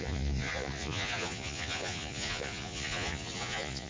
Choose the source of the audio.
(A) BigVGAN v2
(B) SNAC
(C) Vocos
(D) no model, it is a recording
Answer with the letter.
C